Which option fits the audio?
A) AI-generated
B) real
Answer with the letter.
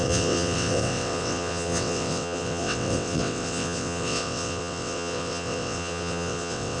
A